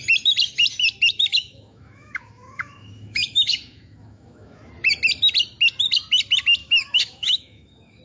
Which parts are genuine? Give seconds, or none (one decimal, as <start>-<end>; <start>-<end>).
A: 0.0-1.3; 4.7-6.6